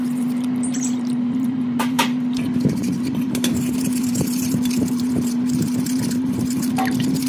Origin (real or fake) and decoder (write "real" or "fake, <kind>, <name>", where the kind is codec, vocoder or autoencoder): fake, vocoder, BigVGAN v2